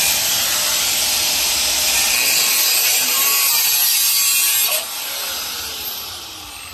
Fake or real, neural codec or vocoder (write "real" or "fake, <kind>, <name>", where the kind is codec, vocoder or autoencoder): real